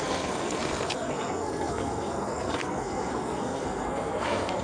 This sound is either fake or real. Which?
fake